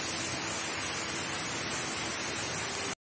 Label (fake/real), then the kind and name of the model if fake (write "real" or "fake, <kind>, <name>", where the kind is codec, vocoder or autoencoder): real